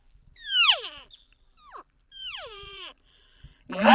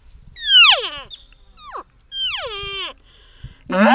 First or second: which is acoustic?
second